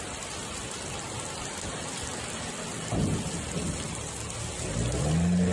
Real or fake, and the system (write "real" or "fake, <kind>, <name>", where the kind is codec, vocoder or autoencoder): real